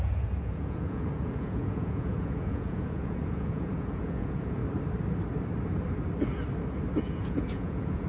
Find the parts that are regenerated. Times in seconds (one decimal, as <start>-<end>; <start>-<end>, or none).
0.0-4.6; 7.0-8.1